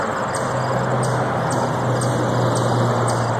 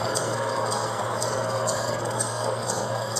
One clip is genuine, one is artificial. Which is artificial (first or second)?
second